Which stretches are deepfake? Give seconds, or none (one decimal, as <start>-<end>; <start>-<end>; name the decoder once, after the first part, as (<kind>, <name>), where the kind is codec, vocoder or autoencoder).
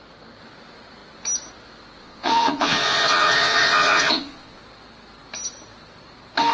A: 2.0-4.6 (vocoder, Vocos)